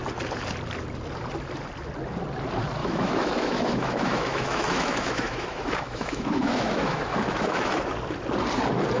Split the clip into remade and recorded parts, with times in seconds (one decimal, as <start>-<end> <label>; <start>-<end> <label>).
0.0-2.8 recorded; 2.8-7.8 remade; 7.8-9.0 recorded